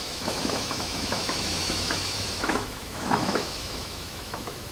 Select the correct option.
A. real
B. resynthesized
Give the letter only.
B